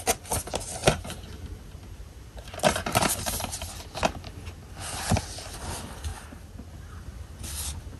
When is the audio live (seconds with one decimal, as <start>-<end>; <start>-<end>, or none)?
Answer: 0.0-0.8; 3.7-6.1; 6.7-8.0

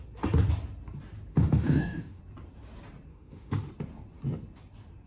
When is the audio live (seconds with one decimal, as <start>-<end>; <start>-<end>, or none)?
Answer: 0.0-1.3; 2.2-3.1; 3.7-5.1

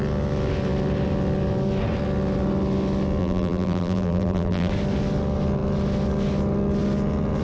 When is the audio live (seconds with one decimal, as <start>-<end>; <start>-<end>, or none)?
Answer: 0.0-3.2; 4.7-7.4

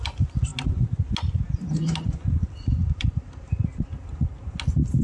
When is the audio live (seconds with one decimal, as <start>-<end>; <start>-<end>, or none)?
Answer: 0.0-2.8; 3.6-5.0